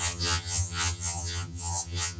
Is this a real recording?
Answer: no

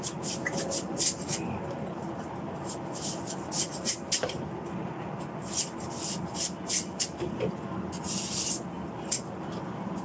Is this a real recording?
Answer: yes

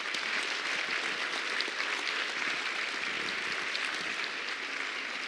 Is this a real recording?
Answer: yes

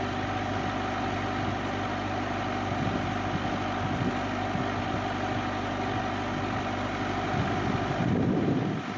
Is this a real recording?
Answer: yes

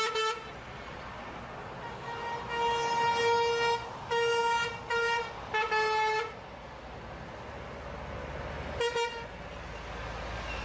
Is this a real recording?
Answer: yes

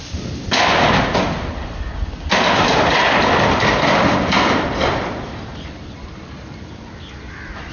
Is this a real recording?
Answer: yes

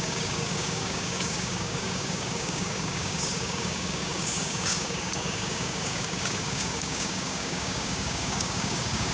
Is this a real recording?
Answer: no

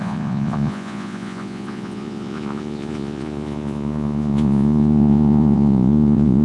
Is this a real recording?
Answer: no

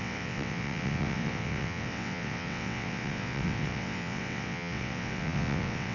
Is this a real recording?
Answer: no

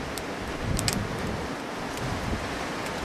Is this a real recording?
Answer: yes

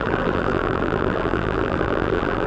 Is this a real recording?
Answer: no